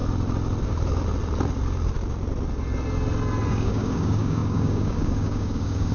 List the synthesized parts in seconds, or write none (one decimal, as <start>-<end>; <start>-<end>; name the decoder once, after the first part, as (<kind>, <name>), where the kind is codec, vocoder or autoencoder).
3.5-5.9 (codec, DAC)